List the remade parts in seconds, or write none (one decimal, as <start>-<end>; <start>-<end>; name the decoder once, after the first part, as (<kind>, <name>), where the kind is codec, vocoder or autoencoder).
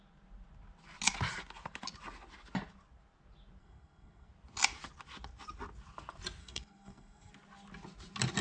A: 3.6-4.3 (codec, SNAC); 6.4-7.3